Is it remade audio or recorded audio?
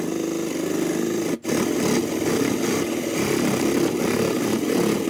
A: recorded